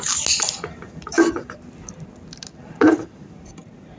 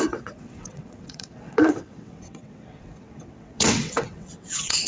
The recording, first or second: first